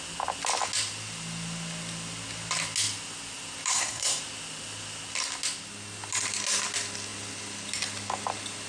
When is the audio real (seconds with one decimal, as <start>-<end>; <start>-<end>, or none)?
0.0-3.7; 4.2-8.7